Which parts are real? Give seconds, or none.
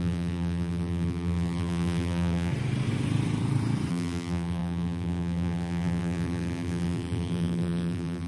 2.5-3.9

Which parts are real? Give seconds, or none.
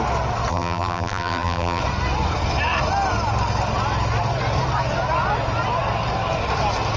0.0-0.5; 1.8-7.0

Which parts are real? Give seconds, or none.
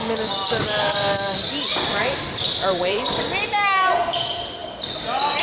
0.0-2.0; 3.2-5.4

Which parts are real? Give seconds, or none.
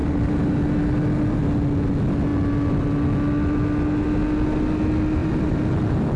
0.5-5.2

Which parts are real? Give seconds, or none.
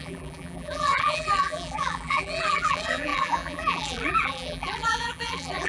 none